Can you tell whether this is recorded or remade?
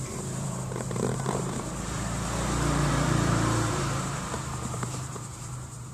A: remade